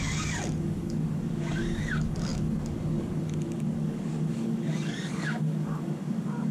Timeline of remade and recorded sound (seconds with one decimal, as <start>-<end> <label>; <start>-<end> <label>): 0.0-6.5 remade